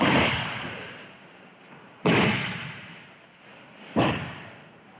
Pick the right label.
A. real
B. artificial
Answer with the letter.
B